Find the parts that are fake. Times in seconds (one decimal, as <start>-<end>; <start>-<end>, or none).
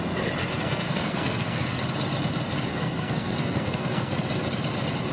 0.4-1.8; 2.7-4.1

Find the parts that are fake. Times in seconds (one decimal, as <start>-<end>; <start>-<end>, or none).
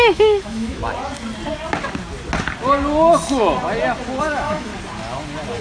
0.0-0.8; 4.2-4.7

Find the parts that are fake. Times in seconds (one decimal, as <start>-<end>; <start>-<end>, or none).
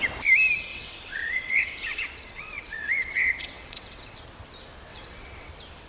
0.7-4.2; 4.9-5.5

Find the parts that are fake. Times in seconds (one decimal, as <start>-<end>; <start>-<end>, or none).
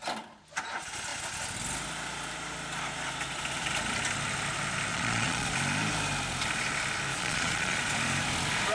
4.9-5.5; 7.1-7.8